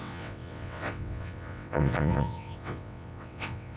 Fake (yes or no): yes